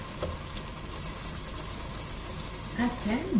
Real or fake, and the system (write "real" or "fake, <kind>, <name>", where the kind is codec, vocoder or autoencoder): real